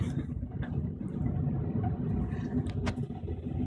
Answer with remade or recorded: recorded